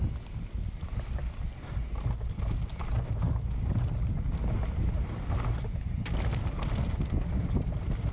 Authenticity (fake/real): real